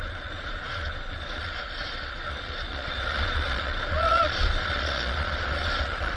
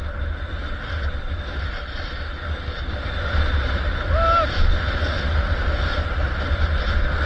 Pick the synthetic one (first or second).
first